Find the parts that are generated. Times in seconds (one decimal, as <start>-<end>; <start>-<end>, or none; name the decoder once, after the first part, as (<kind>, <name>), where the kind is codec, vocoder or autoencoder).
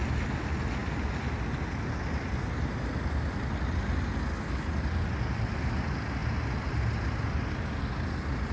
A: none